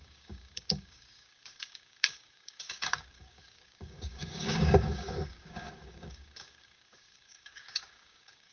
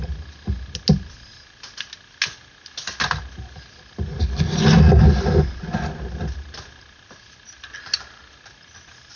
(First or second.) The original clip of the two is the second